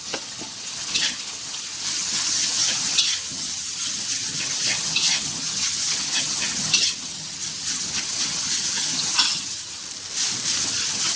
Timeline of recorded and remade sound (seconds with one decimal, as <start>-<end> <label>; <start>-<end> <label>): 0.0-9.8 remade; 9.8-10.6 recorded; 10.6-11.2 remade